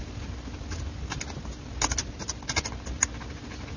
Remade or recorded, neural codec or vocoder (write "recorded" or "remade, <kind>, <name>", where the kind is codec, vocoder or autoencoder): recorded